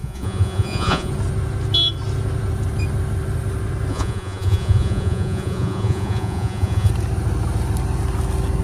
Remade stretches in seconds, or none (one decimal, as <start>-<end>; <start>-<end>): 0.0-1.1; 3.9-6.9